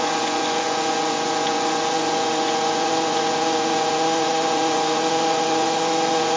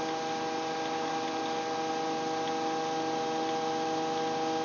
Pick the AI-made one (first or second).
first